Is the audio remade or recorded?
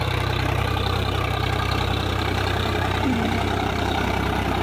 remade